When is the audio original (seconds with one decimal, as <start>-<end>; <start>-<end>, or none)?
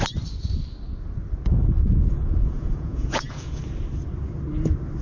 0.0-1.5; 3.6-5.0